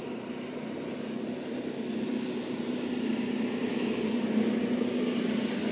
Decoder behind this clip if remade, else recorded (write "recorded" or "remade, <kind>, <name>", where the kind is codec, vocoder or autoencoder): recorded